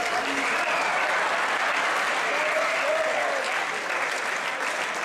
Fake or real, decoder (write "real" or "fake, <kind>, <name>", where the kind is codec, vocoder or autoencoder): real